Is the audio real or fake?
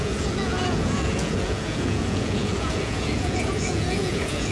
fake